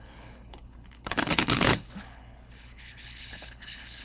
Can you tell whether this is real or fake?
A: fake